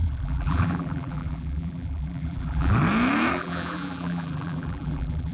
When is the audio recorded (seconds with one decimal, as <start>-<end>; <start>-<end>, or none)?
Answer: 2.7-3.3